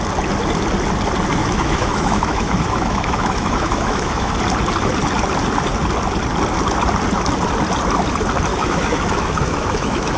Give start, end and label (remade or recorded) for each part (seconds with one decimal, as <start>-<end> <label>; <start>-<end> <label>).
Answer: 0.0-1.4 recorded; 1.4-4.3 remade; 4.3-8.5 recorded; 8.5-10.2 remade